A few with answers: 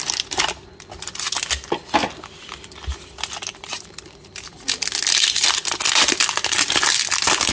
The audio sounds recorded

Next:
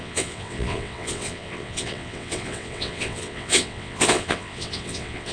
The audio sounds remade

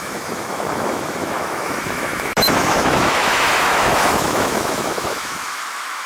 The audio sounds remade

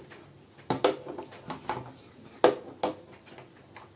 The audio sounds recorded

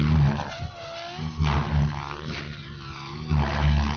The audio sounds recorded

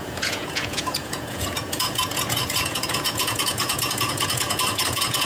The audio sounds remade